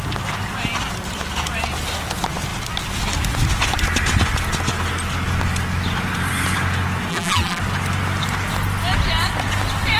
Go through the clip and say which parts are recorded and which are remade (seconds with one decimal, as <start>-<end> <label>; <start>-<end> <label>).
0.0-7.1 recorded; 7.1-7.6 remade; 7.6-10.0 recorded